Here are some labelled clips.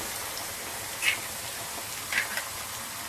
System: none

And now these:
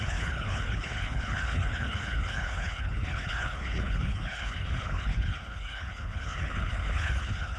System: codec, HILCodec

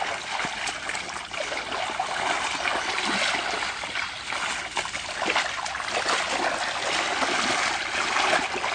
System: none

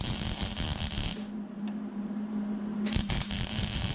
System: vocoder, BigVGAN v2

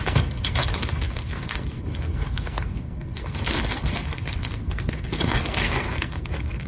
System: codec, SNAC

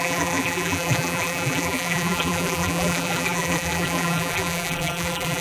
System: vocoder, BigVGAN v2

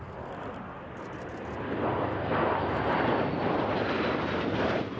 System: none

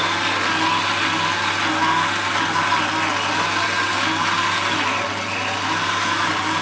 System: none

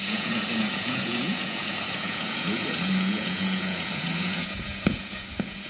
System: vocoder, Vocos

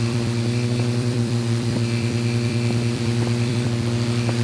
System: vocoder, BigVGAN v2